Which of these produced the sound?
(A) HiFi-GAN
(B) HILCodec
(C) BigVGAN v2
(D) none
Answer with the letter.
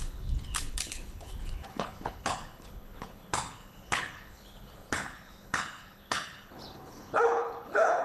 B